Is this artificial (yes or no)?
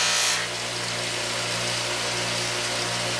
no